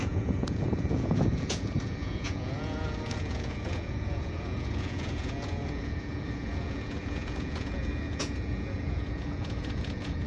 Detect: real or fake fake